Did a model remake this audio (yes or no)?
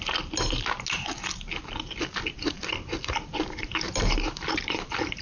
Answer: no